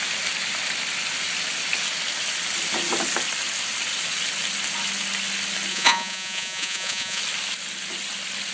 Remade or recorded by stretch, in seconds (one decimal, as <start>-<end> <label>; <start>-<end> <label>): 0.0-5.7 recorded; 5.7-7.2 remade; 7.2-8.5 recorded